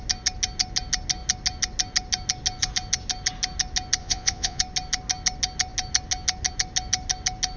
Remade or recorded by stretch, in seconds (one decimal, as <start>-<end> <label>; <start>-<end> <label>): 0.0-4.0 recorded; 4.0-4.6 remade; 4.6-7.6 recorded